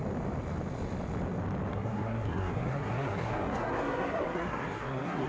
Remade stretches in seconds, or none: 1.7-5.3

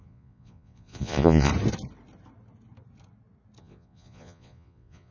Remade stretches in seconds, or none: 0.0-1.5; 3.6-5.1